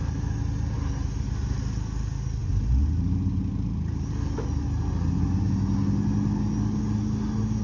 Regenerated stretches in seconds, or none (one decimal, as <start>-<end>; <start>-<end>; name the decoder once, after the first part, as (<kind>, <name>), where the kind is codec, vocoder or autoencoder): none